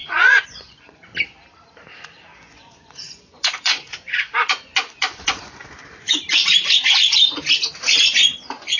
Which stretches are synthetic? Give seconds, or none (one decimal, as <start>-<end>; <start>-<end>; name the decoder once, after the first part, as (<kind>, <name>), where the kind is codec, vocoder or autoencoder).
0.0-1.0 (vocoder, Vocos); 2.3-5.7